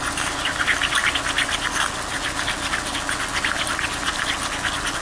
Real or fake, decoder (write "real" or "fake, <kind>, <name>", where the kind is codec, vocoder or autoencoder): real